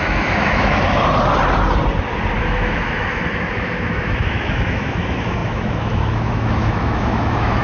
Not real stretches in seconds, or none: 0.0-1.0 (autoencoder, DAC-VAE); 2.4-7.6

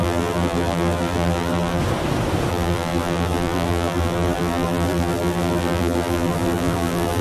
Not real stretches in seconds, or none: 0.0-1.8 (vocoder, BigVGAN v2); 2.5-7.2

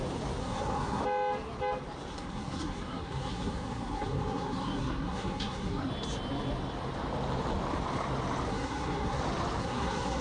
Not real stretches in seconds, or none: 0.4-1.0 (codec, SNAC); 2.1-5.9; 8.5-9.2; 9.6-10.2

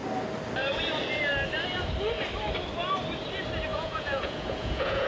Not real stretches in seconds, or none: 3.7-5.1 (vocoder, Vocos)

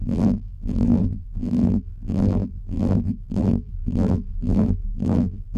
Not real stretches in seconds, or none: 0.0-5.6 (vocoder, BigVGAN v2)

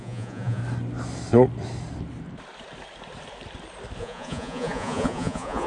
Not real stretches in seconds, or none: 0.0-0.6 (vocoder, Vocos); 4.0-5.7